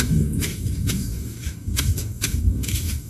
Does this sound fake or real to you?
fake